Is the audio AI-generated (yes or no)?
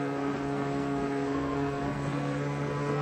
yes